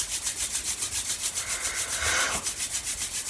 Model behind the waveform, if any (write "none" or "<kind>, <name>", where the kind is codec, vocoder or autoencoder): none